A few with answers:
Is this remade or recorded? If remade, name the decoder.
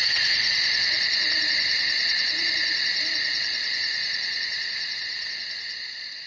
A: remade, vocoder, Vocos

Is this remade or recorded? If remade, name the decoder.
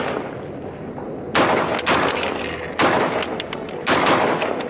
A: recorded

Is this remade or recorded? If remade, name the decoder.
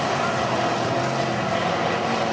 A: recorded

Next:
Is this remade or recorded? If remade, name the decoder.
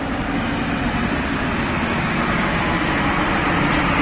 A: recorded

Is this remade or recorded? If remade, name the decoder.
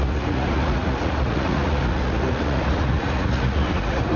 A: remade, vocoder, Vocos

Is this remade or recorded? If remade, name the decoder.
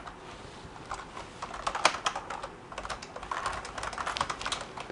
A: recorded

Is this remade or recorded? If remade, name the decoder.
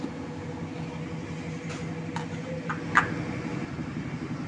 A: recorded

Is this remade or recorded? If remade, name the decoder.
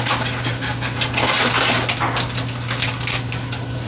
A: recorded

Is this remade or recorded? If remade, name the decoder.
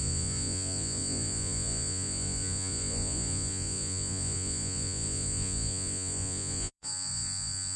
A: remade, vocoder, Vocos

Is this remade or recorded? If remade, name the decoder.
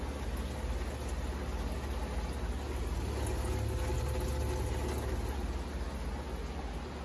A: recorded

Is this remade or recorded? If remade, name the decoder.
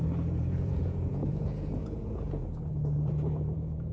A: remade, vocoder, Vocos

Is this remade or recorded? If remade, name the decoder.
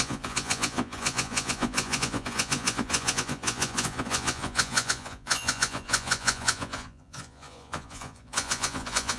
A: remade, vocoder, Vocos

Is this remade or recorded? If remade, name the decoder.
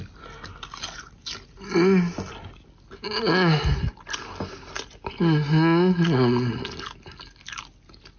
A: recorded